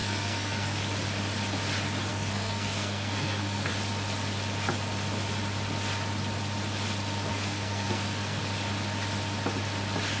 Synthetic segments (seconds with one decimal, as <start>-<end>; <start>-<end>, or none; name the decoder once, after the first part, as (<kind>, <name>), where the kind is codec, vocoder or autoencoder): 0.0-0.8 (codec, SNAC); 2.1-3.7; 7.3-8.4